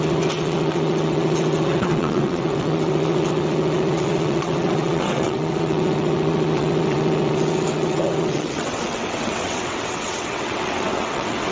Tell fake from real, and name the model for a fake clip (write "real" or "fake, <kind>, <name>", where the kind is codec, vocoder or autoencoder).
fake, vocoder, WaveNeXt